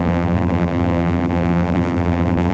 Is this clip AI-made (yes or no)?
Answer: yes